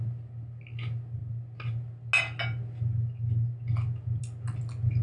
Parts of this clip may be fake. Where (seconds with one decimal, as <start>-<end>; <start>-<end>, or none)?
none